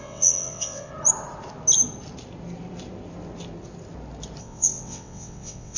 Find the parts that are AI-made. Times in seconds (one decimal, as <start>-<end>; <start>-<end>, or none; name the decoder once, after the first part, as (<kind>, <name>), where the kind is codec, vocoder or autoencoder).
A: 0.0-0.9 (vocoder, WaveNeXt); 4.4-5.8